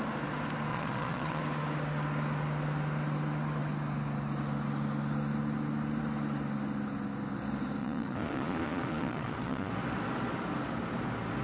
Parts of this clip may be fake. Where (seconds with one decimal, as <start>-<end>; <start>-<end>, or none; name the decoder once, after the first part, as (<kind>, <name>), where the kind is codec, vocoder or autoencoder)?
0.7-1.4 (vocoder, Vocos); 7.8-9.7